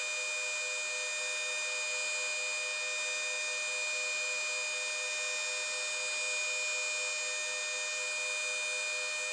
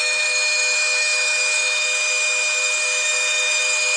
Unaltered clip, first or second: first